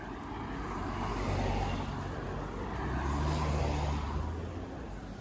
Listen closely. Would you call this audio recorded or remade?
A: recorded